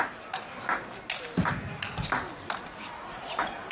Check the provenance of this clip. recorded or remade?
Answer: recorded